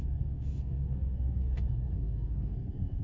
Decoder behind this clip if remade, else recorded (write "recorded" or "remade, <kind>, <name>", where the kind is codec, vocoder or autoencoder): remade, codec, SNAC